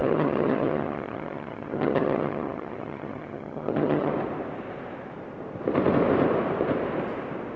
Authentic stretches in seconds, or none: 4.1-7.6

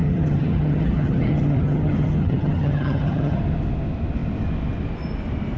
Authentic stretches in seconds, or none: 3.4-5.6

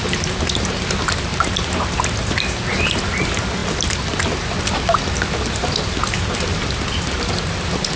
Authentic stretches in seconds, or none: 0.0-8.0

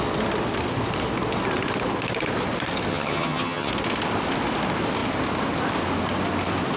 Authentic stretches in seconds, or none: 0.0-2.9; 3.7-6.8

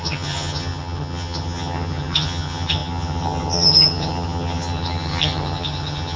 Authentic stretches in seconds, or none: none

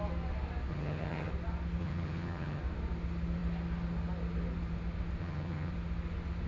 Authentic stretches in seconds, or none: 0.0-0.7; 1.3-1.8; 2.6-5.2; 5.7-6.5

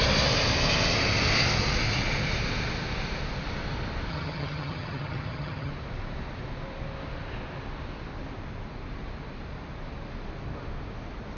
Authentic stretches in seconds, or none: 0.0-4.1; 5.7-11.4